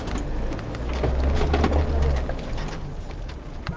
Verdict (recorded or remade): recorded